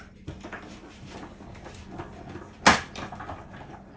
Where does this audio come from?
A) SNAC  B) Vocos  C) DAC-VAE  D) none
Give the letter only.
D